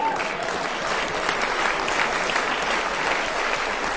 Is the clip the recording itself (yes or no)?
yes